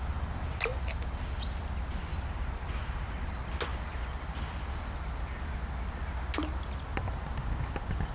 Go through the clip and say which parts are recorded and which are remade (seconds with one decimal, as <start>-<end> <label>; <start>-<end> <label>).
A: 0.0-2.1 recorded; 2.1-3.3 remade; 3.3-8.1 recorded